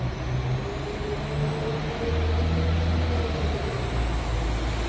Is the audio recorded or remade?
recorded